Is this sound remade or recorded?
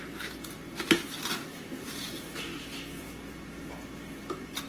recorded